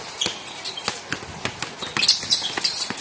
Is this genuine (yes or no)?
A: yes